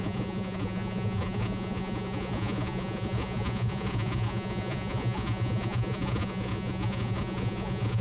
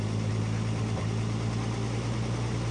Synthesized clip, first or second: first